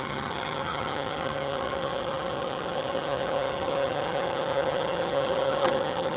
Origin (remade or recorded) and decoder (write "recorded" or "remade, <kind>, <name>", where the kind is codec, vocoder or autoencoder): remade, vocoder, HiFi-GAN